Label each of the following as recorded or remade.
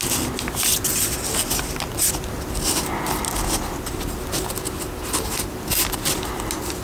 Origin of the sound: recorded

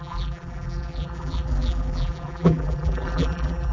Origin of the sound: remade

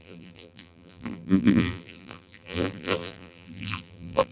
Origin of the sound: remade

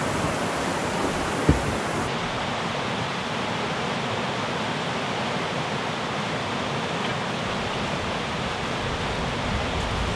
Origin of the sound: recorded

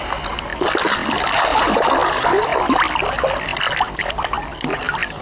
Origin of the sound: recorded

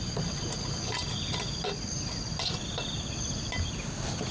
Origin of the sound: recorded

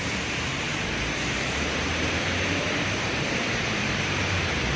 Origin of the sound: remade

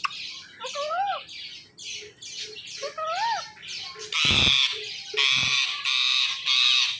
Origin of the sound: recorded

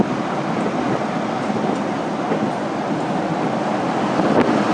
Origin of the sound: recorded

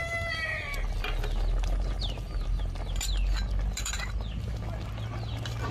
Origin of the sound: recorded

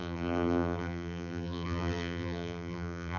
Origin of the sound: remade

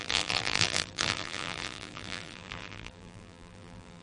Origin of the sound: remade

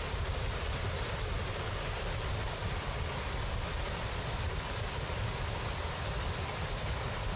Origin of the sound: recorded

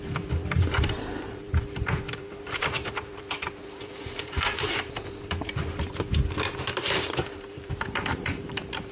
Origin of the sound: remade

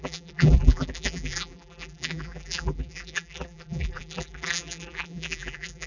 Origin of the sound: remade